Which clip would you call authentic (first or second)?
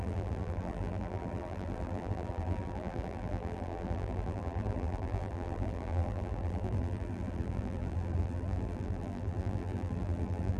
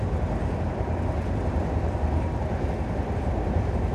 second